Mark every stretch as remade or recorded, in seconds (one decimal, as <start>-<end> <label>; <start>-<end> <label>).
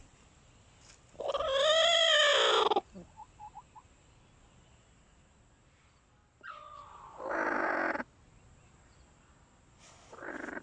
0.0-10.6 recorded